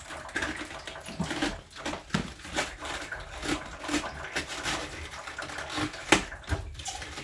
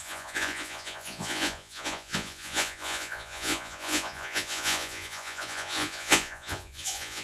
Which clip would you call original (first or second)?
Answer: first